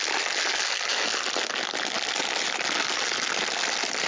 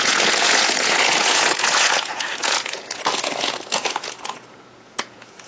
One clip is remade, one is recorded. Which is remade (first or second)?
second